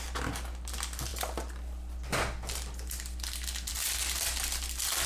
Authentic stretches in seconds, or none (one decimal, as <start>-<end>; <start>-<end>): 0.0-5.1